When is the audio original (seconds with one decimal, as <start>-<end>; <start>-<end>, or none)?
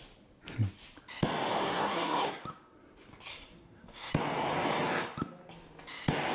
0.0-1.6; 2.4-3.3; 4.1-6.3